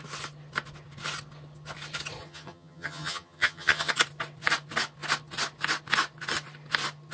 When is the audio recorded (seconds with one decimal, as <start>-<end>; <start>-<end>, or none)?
0.0-2.2; 3.9-7.1